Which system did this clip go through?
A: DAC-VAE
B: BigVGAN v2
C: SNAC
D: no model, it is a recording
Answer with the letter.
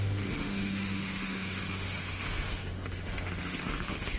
A